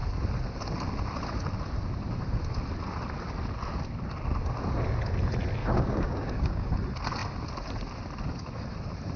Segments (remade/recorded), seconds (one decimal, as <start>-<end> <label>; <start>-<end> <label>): 0.0-5.6 recorded; 5.6-6.7 remade; 6.7-9.2 recorded